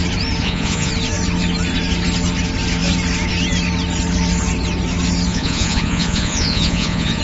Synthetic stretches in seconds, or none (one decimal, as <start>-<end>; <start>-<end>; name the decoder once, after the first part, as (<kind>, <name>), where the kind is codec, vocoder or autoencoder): 0.4-0.9 (vocoder, Vocos); 5.3-7.2

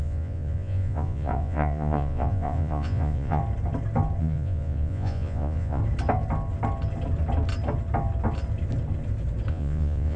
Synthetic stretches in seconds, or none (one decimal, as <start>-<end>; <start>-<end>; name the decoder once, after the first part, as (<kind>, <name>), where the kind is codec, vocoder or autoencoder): 0.0-3.4 (vocoder, Vocos); 4.2-5.8; 9.5-10.2

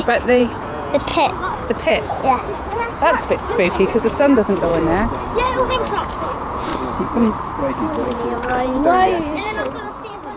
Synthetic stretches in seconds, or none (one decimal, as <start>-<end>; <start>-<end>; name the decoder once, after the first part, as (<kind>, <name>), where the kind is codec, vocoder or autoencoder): 0.0-1.1 (vocoder, Vocos); 1.9-4.7; 5.4-6.7; 7.6-10.4

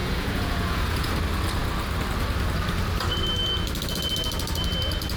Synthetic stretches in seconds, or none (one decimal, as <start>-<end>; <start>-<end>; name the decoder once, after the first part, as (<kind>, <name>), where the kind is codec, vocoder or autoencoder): 0.0-1.1 (vocoder, Vocos)